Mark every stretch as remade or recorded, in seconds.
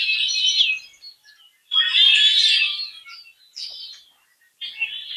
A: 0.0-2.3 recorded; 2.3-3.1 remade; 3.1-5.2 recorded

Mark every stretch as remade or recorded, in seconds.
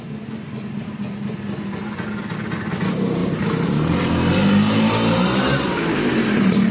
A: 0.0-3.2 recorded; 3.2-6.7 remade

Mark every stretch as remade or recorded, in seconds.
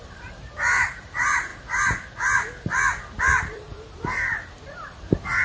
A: 0.0-1.5 remade; 1.5-3.2 recorded; 3.2-5.4 remade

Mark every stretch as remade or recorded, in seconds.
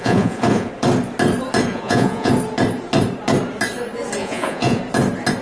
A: 0.0-0.7 remade; 0.7-1.7 recorded; 1.7-2.3 remade; 2.3-4.2 recorded; 4.2-4.8 remade; 4.8-5.4 recorded